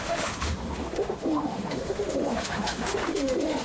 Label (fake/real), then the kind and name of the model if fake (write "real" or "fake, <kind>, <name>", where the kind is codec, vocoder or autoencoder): fake, autoencoder, DAC-VAE